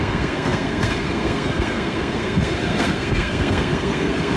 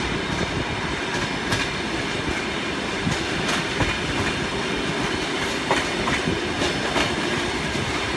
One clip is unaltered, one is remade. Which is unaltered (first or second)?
second